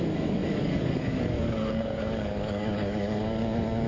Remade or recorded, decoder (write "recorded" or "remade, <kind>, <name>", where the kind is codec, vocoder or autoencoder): remade, codec, DAC